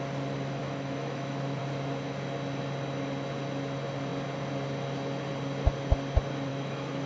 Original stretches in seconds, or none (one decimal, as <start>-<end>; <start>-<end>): 0.0-0.6; 1.6-6.5